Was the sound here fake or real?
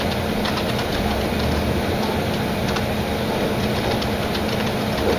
real